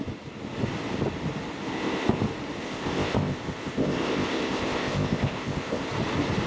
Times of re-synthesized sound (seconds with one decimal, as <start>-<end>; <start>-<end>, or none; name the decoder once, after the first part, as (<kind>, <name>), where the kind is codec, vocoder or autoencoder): 1.7-2.2 (codec, ZipCodec); 2.6-5.9